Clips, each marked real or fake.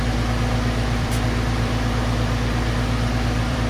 fake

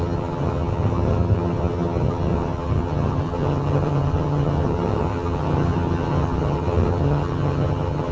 fake